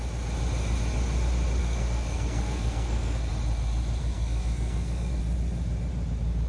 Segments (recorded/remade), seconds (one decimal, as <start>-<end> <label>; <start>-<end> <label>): 0.0-1.6 recorded; 1.6-3.3 remade; 3.3-4.0 recorded; 4.0-5.2 remade; 5.2-6.5 recorded